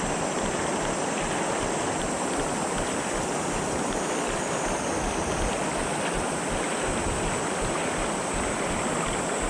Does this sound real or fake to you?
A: real